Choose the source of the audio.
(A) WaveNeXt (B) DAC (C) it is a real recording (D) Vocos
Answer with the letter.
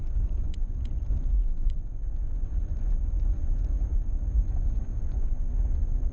D